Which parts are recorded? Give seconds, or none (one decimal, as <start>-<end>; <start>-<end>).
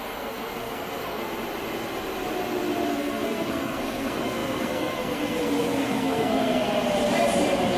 1.2-2.9; 6.7-7.8